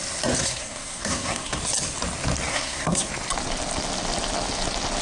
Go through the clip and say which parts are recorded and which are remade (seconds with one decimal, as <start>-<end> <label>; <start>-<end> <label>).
0.0-0.4 recorded; 0.4-1.6 remade; 1.6-2.5 recorded; 2.5-3.1 remade; 3.1-5.0 recorded